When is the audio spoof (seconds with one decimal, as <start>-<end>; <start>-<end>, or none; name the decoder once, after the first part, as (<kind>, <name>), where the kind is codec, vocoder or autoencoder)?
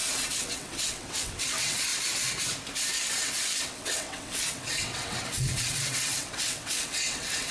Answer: 0.0-1.9 (vocoder, WaveNeXt); 2.9-7.5